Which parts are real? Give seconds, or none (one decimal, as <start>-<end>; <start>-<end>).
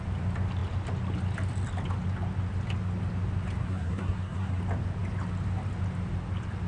0.0-3.6; 4.6-6.7